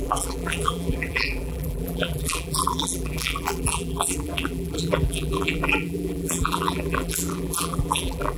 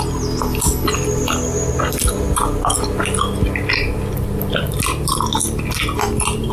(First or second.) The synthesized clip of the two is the first